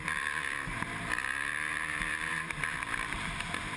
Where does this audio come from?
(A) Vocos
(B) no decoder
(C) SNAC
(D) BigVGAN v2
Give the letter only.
D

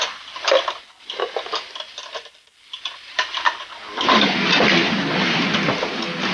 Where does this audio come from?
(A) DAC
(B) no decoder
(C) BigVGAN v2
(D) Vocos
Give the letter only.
B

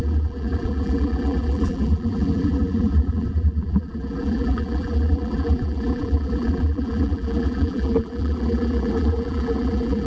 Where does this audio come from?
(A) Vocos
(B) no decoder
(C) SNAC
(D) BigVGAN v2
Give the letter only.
D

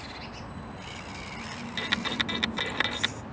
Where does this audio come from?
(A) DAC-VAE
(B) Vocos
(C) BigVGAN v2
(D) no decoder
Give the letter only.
D